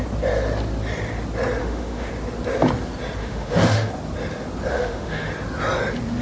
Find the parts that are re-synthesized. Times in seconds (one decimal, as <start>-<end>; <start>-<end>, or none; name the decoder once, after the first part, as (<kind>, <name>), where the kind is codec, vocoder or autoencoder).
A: 1.6-2.1 (autoencoder, DAC-VAE); 3.2-3.9; 4.7-5.3